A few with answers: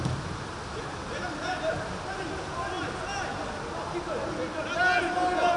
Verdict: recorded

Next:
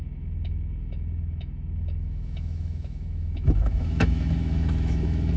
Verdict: remade